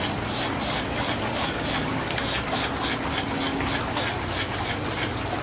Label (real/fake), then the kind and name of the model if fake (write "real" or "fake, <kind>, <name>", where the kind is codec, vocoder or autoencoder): real